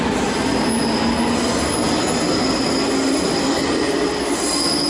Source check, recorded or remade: recorded